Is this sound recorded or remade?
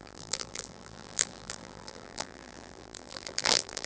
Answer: remade